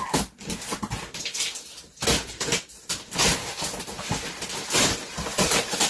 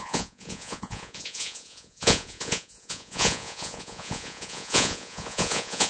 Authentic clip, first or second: first